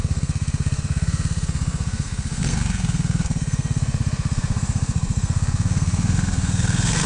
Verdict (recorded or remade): remade